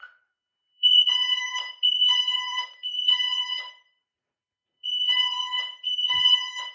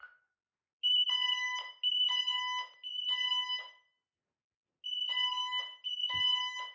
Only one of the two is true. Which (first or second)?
second